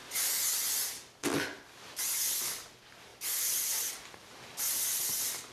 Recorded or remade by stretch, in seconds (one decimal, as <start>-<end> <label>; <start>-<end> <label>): 0.0-2.4 remade; 2.4-3.1 recorded; 3.1-3.9 remade; 3.9-5.5 recorded